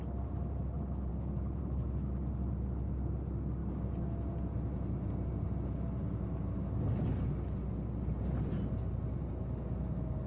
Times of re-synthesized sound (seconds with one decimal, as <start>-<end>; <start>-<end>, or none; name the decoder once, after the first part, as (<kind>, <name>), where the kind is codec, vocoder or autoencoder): none